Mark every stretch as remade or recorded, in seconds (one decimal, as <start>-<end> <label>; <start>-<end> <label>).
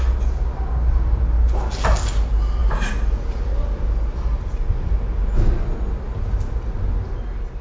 0.0-7.6 recorded